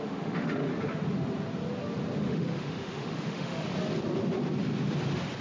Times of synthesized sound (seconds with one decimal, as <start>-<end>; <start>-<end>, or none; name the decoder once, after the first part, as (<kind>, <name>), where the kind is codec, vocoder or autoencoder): 0.0-0.7 (autoencoder, DAC-VAE); 2.2-3.7